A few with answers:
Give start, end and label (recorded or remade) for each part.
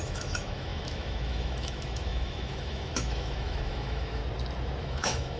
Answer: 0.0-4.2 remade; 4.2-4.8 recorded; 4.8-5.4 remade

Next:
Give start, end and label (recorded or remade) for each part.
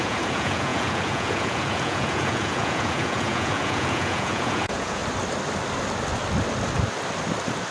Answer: 0.0-5.0 remade; 5.0-7.7 recorded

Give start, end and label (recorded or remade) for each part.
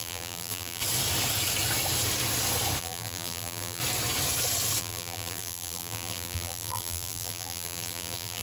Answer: 0.0-0.8 remade; 0.8-2.8 recorded; 2.8-3.8 remade; 3.8-4.8 recorded; 4.8-8.4 remade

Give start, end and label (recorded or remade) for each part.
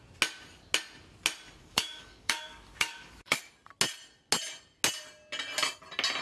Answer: 0.0-1.6 recorded; 1.6-3.4 remade; 3.4-6.2 recorded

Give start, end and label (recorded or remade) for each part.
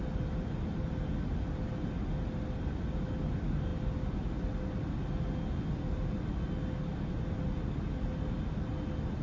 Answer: 0.0-9.2 recorded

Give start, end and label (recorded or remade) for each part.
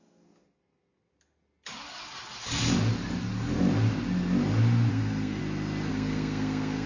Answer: 0.0-1.1 remade; 1.1-4.9 recorded; 4.9-5.4 remade; 5.4-5.9 recorded; 5.9-6.9 remade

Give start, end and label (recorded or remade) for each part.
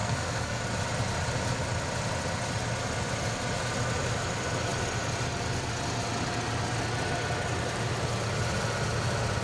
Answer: 0.0-0.6 remade; 0.6-9.4 recorded